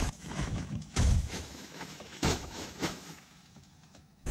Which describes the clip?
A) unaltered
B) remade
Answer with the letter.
B